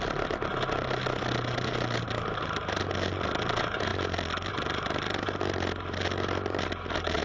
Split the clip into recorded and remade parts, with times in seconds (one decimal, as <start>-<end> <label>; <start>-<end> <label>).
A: 0.0-7.2 recorded